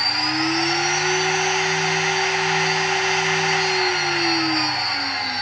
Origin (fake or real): real